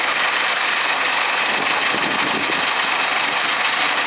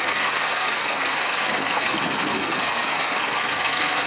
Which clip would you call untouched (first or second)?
first